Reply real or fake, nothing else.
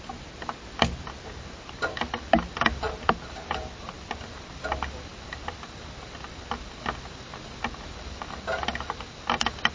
real